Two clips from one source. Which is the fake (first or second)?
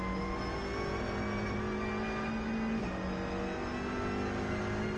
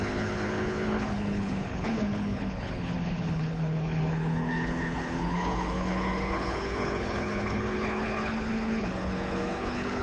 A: second